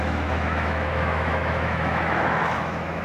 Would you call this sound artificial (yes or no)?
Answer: yes